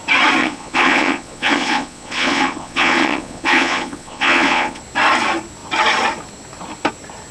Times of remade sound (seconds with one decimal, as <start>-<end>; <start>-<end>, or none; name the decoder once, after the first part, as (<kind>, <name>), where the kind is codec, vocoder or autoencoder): 0.4-4.8 (vocoder, Vocos)